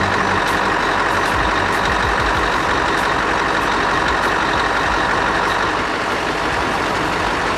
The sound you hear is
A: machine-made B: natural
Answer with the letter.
B